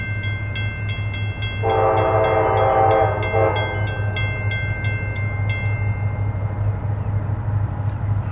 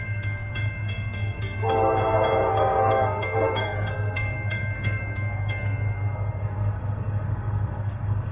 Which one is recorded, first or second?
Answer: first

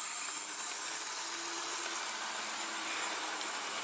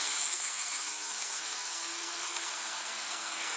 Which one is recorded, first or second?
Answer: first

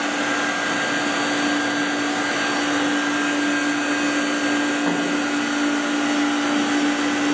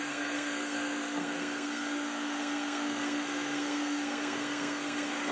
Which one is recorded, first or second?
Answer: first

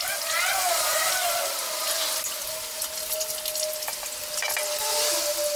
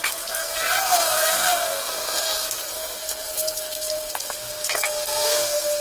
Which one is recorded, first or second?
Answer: first